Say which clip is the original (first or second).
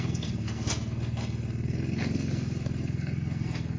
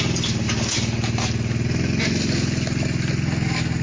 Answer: second